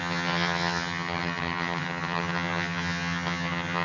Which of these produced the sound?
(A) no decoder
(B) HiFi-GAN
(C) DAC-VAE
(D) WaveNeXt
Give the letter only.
B